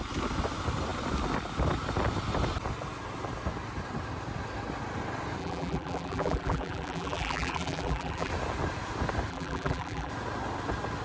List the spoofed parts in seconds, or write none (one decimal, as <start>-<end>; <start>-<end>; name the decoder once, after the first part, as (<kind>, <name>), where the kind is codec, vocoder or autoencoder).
5.4-8.3 (vocoder, BigVGAN v2); 9.3-10.1